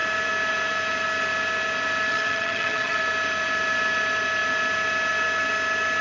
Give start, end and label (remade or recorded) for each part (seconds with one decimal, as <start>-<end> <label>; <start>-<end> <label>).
0.0-2.1 recorded; 2.1-3.0 remade; 3.0-6.0 recorded